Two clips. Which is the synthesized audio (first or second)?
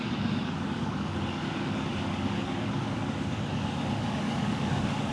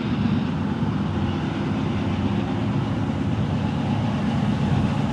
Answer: first